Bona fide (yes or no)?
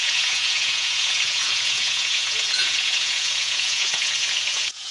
no